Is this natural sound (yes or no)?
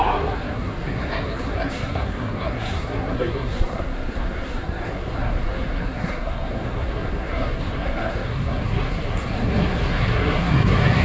no